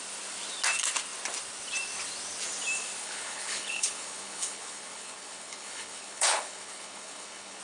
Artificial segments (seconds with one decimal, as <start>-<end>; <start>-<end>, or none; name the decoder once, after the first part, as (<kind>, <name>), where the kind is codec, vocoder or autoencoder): 3.0-7.6 (codec, HILCodec)